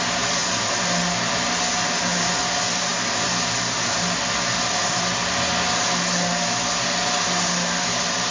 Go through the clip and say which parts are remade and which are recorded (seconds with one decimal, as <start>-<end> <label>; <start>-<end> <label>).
0.0-8.3 recorded